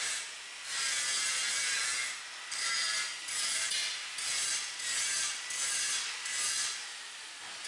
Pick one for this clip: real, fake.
real